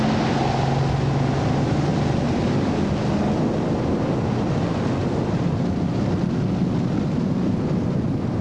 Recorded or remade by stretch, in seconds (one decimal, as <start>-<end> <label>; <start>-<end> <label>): 0.0-8.4 recorded